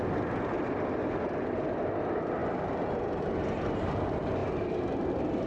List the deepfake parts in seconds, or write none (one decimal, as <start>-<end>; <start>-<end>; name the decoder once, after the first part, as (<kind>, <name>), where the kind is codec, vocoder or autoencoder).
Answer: none